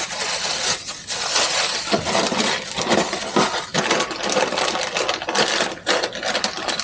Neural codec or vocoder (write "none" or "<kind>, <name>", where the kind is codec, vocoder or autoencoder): none